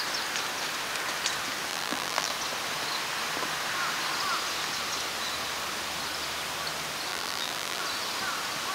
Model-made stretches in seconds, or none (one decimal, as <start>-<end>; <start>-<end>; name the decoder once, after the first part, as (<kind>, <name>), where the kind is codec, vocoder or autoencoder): 1.7-2.3 (vocoder, BigVGAN v2); 7.1-7.8